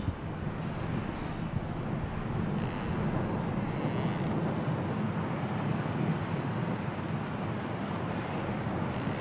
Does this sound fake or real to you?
real